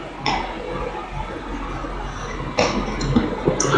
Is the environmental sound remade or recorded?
recorded